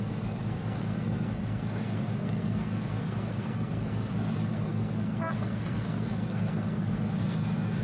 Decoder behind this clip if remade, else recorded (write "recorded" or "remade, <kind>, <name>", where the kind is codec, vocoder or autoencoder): remade, codec, SNAC